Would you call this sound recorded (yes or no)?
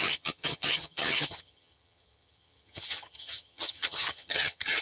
no